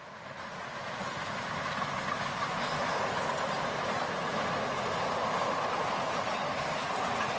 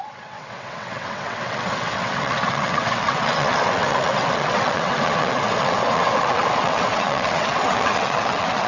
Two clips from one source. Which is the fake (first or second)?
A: second